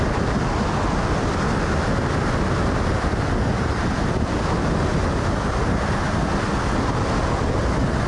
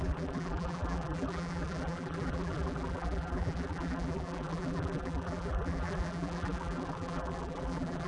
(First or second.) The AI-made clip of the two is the second